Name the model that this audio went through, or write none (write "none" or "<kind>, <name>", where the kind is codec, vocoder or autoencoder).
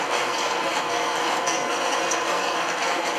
codec, SNAC